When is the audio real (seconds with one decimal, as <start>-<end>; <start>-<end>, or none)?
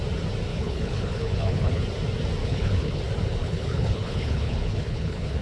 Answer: 0.0-0.5; 1.8-2.4; 3.0-3.4